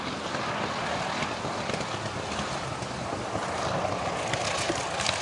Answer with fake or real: real